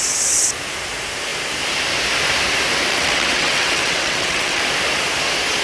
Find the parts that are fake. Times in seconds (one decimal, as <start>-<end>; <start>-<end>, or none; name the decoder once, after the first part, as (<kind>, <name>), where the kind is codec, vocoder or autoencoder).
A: 2.9-4.6 (vocoder, WaveNeXt)